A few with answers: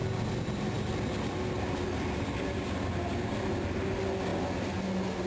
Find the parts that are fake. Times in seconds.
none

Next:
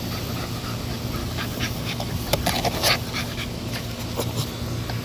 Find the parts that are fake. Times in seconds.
1.2-2.1 (codec, DAC); 3.2-4.0

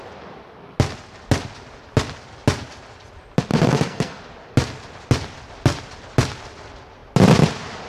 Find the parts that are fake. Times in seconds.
3.5-4.2 (codec, SNAC)